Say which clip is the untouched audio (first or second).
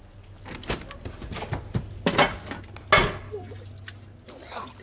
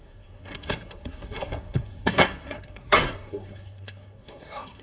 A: first